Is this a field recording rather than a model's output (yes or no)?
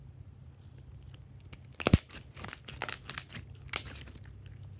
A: yes